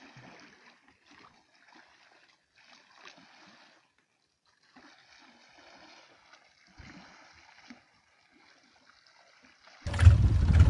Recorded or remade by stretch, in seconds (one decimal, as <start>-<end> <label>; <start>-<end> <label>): 0.0-10.7 recorded

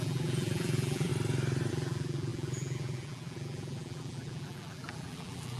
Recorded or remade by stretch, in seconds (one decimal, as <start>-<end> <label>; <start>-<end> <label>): 0.0-1.1 remade; 1.1-1.7 recorded; 1.7-5.6 remade

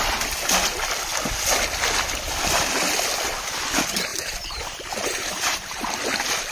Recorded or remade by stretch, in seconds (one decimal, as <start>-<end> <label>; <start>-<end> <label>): 0.0-4.1 recorded; 4.1-5.9 remade; 5.9-6.5 recorded